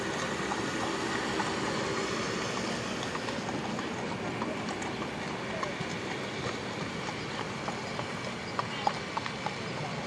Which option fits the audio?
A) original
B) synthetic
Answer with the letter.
A